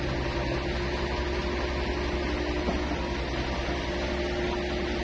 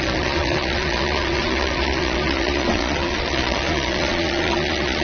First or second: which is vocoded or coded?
second